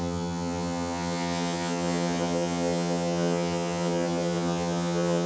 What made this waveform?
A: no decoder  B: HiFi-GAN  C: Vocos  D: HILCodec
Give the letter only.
B